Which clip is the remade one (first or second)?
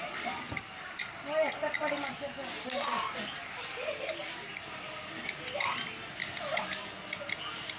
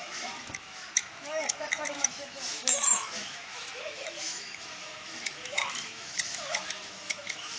second